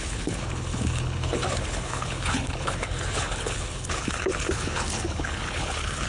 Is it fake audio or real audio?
fake